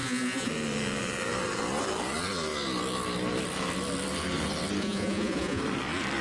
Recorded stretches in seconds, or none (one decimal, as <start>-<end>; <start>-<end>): 0.5-4.8; 5.6-6.2